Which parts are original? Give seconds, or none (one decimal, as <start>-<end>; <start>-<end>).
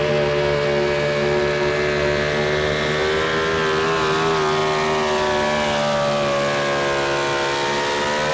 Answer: 0.0-8.3